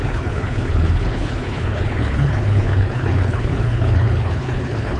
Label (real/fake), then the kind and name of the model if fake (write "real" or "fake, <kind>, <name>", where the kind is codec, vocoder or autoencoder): fake, codec, HILCodec